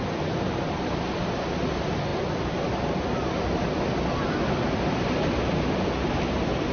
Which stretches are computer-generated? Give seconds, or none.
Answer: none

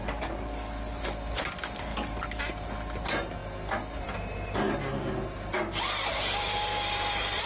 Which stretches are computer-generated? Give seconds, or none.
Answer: 0.0-1.0 (codec, DAC); 1.9-2.4